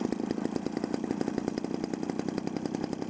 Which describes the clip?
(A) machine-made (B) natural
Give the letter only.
B